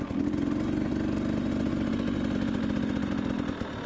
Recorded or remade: recorded